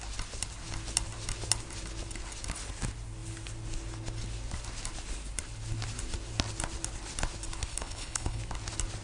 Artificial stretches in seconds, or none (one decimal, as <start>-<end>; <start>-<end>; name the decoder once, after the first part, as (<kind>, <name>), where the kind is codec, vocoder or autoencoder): 7.7-8.4 (codec, HILCodec)